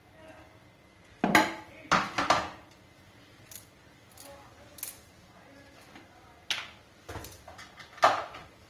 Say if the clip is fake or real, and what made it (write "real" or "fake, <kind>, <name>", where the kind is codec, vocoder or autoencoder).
real